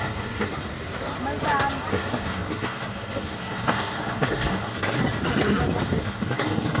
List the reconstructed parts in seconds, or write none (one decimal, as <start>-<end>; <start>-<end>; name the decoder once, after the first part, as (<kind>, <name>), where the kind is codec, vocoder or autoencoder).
0.0-0.5 (codec, SNAC); 1.9-5.0; 6.0-6.8